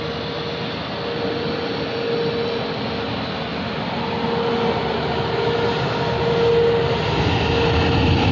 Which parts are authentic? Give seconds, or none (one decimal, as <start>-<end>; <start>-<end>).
0.0-8.3